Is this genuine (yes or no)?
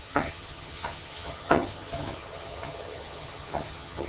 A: no